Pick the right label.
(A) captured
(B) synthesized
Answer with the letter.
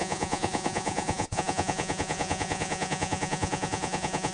B